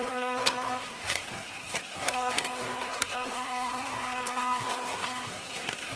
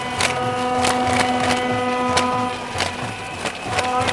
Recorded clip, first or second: second